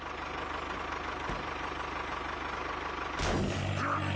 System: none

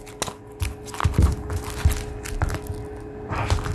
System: none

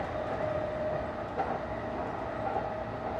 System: none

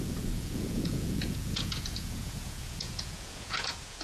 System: vocoder, Vocos